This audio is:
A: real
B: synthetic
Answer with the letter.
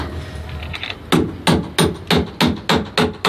A